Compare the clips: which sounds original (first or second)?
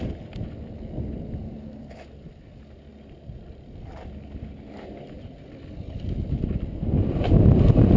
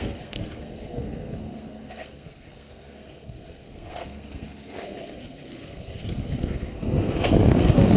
first